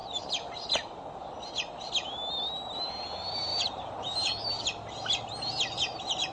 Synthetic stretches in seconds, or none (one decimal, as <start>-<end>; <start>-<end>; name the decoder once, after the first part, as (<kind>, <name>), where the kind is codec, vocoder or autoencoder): 3.5-4.6 (vocoder, BigVGAN v2)